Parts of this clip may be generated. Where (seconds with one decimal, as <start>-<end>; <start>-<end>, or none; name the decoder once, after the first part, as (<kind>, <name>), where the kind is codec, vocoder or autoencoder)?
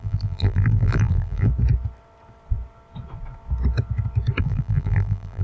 0.0-1.5 (vocoder, BigVGAN v2); 4.4-5.4